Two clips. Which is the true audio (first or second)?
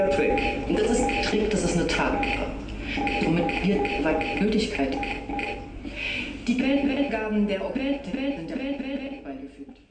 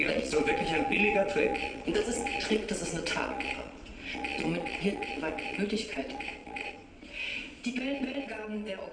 first